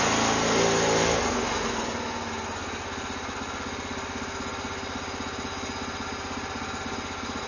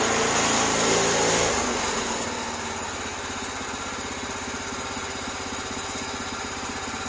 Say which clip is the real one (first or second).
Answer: first